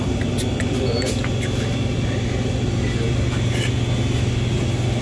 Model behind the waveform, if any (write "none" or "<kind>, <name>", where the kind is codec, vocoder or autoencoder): none